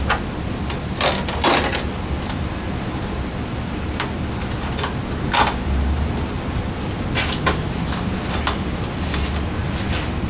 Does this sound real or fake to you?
real